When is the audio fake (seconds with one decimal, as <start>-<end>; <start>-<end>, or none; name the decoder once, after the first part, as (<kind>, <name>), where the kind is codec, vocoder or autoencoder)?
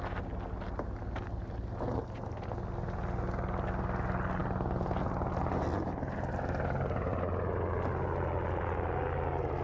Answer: none